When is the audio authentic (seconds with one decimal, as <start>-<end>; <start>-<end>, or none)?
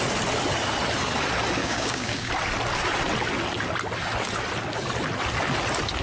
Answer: 0.0-1.6; 2.3-6.0